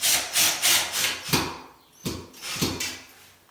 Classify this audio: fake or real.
real